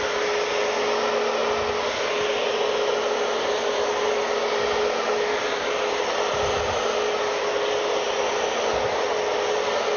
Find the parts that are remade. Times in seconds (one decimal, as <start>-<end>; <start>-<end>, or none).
none